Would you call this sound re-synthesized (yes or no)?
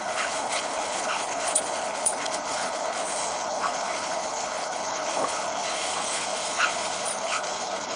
yes